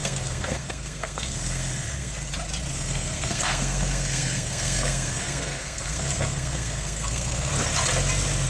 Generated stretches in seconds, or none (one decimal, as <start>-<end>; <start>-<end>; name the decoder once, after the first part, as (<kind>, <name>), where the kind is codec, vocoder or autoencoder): 0.0-2.1 (codec, SNAC); 2.7-7.5